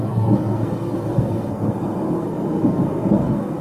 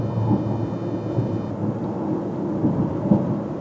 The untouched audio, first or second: second